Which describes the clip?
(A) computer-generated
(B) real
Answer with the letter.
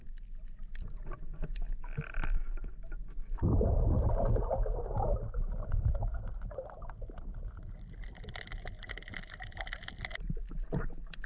B